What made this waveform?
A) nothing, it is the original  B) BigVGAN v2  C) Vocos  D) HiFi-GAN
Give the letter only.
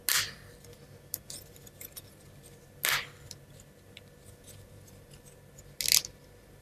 A